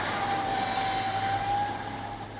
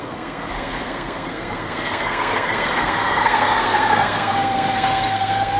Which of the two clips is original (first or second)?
first